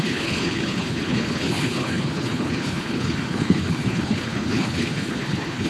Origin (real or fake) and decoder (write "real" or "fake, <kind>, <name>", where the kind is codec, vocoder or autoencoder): fake, codec, HILCodec